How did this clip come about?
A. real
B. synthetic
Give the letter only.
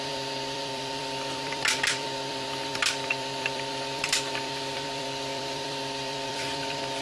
B